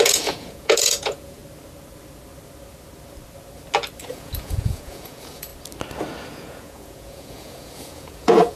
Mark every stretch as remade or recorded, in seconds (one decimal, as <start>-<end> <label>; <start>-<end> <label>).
0.0-1.4 remade; 1.4-4.0 recorded; 4.0-5.5 remade; 5.5-6.3 recorded; 6.3-8.6 remade